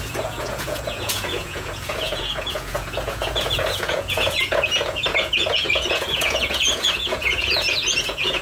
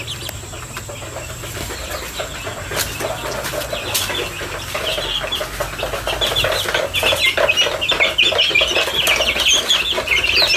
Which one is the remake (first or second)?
first